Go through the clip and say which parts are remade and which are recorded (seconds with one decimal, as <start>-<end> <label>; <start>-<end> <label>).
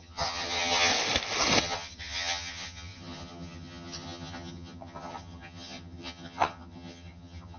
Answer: 0.0-0.9 remade; 0.9-1.6 recorded; 1.6-7.6 remade